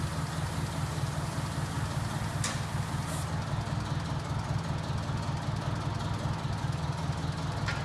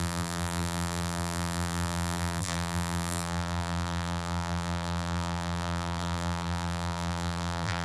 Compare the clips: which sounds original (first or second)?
first